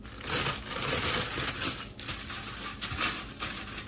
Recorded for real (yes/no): yes